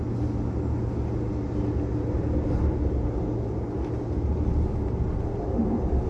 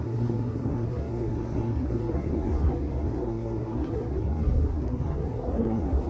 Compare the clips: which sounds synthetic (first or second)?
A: second